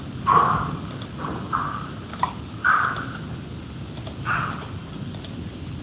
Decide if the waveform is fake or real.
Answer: real